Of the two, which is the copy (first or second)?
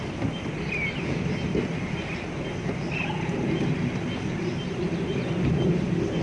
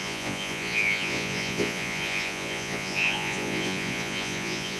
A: second